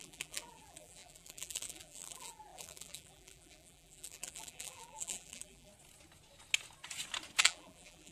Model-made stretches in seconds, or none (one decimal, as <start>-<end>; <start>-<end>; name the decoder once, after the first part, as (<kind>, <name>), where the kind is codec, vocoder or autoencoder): 0.0-5.7 (vocoder, BigVGAN v2); 7.4-8.1